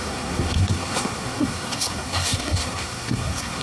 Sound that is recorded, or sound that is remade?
remade